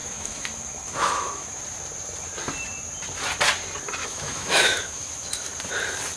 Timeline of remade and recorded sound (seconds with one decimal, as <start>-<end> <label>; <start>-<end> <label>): 0.0-1.6 remade; 1.6-4.0 recorded; 4.0-5.5 remade; 5.5-6.2 recorded